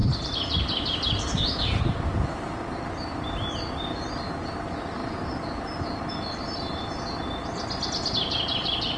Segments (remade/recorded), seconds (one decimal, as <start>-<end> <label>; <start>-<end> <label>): 0.0-9.0 recorded